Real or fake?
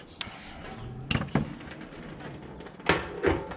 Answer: real